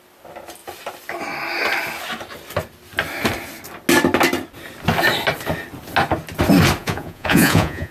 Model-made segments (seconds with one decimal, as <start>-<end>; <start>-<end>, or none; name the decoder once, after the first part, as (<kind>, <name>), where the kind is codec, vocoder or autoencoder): 6.8-7.9 (vocoder, Vocos)